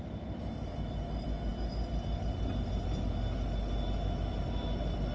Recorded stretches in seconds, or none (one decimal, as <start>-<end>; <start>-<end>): 0.0-5.1